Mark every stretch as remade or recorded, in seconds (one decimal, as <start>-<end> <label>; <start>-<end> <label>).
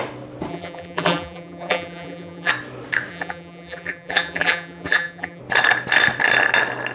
0.0-0.5 recorded; 0.5-2.5 remade; 2.5-3.1 recorded; 3.1-5.4 remade; 5.4-6.9 recorded